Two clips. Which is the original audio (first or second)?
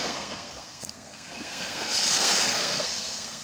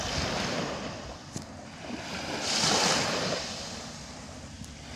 second